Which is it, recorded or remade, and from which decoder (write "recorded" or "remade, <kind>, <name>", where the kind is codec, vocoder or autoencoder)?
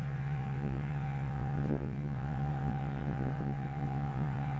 remade, vocoder, WaveNeXt